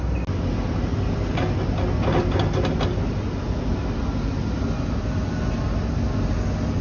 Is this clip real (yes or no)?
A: yes